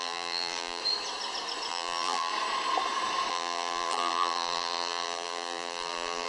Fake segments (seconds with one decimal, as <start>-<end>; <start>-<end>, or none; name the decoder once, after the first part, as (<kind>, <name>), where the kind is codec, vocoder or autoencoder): 0.0-0.8 (vocoder, BigVGAN v2); 1.7-2.3; 3.3-6.3